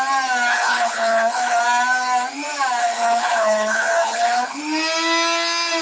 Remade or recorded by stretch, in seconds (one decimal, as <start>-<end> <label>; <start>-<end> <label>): 0.0-0.5 recorded; 0.5-1.6 remade; 1.6-2.8 recorded; 2.8-4.6 remade; 4.6-5.8 recorded